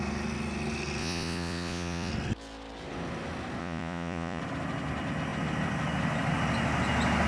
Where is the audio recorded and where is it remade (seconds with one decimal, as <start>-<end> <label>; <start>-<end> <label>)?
0.0-1.0 recorded; 1.0-2.1 remade; 2.1-3.6 recorded; 3.6-4.4 remade; 4.4-7.3 recorded